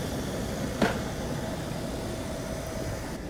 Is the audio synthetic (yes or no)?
no